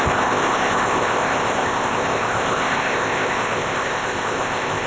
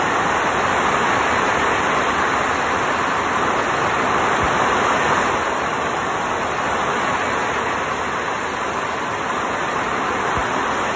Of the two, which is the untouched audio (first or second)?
second